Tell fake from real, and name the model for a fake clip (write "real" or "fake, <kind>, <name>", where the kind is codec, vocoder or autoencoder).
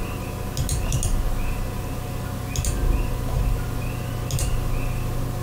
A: real